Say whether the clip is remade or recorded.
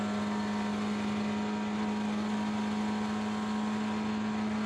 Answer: recorded